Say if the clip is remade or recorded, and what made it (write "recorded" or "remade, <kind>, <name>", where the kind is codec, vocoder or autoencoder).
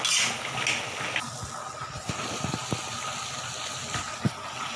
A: recorded